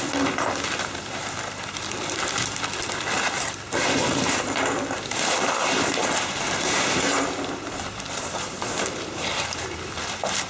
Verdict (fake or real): fake